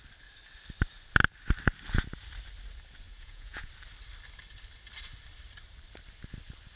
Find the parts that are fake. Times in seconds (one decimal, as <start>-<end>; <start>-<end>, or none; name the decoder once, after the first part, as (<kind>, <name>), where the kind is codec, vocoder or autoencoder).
3.1-3.7 (vocoder, Vocos)